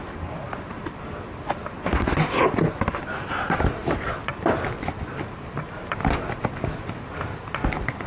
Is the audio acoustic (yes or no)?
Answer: yes